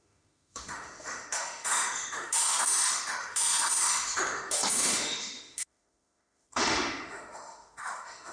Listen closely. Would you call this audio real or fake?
fake